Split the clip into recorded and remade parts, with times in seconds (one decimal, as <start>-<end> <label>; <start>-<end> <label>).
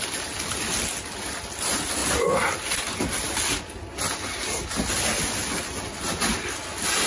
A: 0.0-7.1 recorded